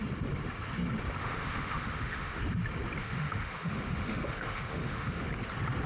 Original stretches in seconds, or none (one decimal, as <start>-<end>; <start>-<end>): 0.0-1.2; 2.4-3.0; 5.3-5.9